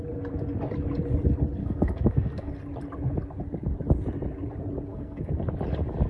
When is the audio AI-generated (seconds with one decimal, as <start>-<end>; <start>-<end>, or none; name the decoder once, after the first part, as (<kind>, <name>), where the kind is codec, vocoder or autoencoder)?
1.6-2.5 (codec, SNAC); 4.9-5.5

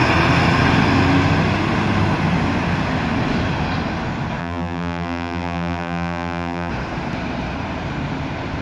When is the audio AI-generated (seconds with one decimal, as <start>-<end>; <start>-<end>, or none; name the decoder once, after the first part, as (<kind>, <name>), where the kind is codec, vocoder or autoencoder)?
4.4-6.7 (vocoder, BigVGAN v2)

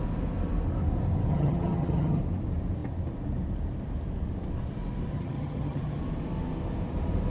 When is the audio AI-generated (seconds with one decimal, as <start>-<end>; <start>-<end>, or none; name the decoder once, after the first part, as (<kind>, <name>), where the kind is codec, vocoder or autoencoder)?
1.3-2.2 (vocoder, HiFi-GAN); 5.1-6.0

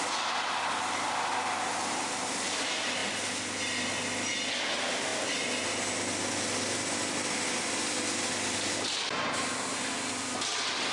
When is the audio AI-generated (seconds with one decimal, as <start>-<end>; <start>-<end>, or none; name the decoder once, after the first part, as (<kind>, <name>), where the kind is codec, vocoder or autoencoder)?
none

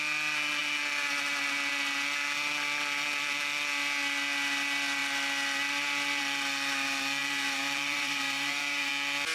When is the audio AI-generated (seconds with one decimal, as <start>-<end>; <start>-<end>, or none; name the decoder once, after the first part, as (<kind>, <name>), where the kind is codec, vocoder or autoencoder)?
7.2-8.9 (vocoder, BigVGAN v2)